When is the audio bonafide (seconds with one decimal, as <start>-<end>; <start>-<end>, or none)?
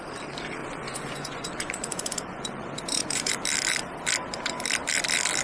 0.0-0.6; 3.3-5.4